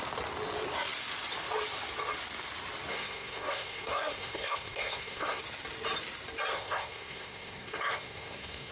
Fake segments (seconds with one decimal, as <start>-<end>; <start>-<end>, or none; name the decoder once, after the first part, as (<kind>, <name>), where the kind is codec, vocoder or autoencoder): 2.9-5.4 (codec, SNAC); 6.5-8.7